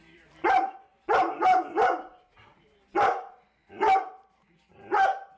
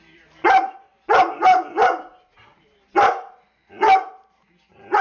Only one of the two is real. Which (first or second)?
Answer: second